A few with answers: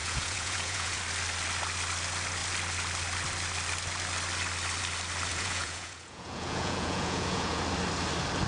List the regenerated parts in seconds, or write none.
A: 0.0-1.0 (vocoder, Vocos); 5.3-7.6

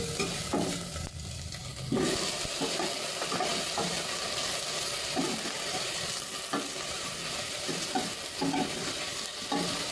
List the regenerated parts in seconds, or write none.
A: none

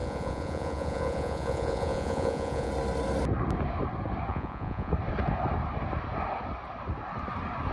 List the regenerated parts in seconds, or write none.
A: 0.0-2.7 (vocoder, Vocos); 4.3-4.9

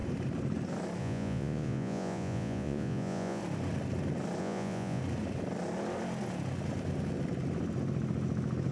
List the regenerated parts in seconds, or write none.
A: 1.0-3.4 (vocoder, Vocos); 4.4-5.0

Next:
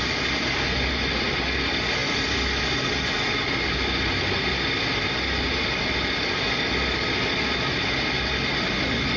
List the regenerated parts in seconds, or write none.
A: none